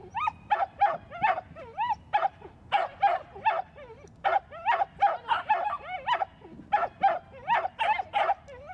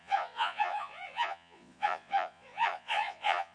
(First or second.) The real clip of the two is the first